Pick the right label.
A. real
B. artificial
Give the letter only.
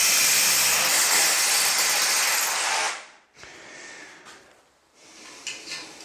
A